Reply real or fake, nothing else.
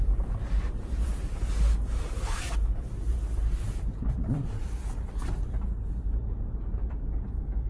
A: fake